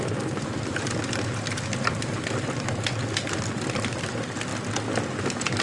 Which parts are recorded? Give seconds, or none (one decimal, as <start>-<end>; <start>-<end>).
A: 0.0-5.6